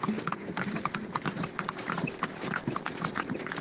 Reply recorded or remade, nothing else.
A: remade